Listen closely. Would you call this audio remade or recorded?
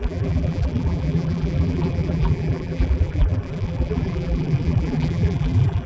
remade